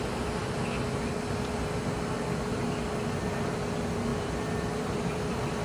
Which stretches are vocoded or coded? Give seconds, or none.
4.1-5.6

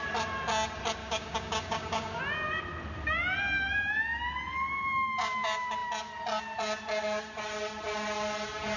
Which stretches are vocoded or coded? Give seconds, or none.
1.0-2.2

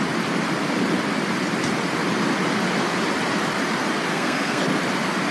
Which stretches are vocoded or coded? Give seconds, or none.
4.1-4.6